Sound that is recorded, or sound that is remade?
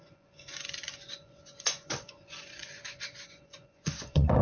remade